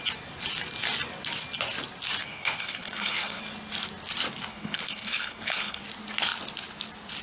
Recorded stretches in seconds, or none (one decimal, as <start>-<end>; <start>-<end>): 0.0-2.2; 3.4-4.5; 5.8-7.2